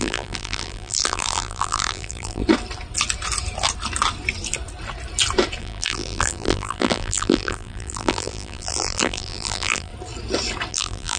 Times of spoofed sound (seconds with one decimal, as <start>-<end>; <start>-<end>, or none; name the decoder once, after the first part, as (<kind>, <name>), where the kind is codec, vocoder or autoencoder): 0.0-2.4 (vocoder, BigVGAN v2); 5.6-9.9; 10.7-11.2